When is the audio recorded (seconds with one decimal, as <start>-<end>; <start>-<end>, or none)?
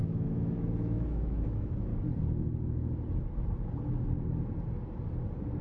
1.9-5.6